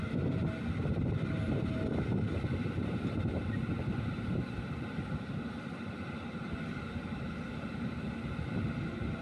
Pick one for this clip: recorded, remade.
recorded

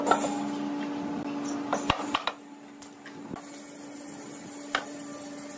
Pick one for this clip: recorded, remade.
recorded